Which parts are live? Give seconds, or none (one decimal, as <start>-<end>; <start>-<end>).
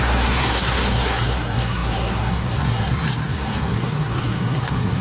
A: none